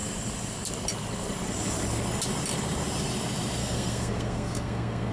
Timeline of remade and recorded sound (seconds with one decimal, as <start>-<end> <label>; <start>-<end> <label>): 0.0-3.6 recorded; 3.6-5.1 remade